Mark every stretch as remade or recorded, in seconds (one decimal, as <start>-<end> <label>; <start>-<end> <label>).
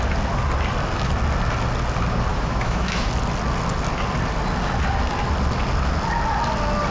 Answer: 0.0-2.3 recorded; 2.3-3.1 remade; 3.1-6.9 recorded